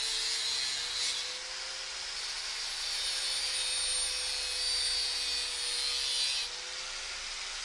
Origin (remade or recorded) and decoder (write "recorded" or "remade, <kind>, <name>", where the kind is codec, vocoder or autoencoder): recorded